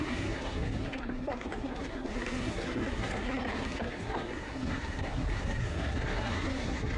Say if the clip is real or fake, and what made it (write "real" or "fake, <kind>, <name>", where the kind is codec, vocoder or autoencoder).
fake, codec, SNAC